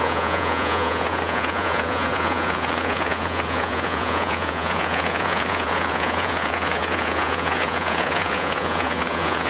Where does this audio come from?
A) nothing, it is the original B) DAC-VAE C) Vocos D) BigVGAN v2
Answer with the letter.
C